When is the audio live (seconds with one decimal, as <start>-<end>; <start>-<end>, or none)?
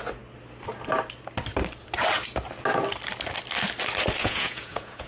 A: 0.0-4.2